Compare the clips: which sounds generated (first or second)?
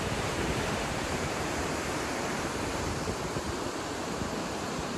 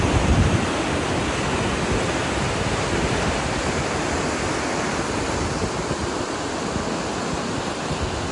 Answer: first